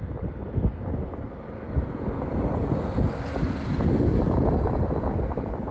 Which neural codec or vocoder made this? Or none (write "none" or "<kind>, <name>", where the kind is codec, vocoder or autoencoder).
none